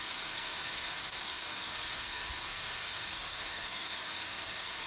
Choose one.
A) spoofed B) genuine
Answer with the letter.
A